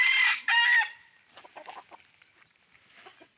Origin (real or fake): real